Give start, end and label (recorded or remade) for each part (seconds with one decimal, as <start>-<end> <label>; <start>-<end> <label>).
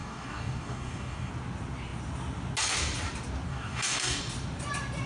0.0-1.3 remade; 1.3-3.5 recorded; 3.5-4.2 remade; 4.2-5.1 recorded